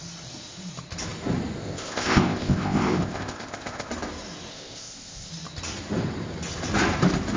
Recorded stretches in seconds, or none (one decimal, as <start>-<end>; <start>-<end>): 0.0-1.6; 3.9-4.5; 5.3-7.4